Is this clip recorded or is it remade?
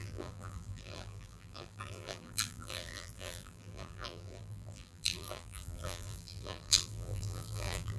remade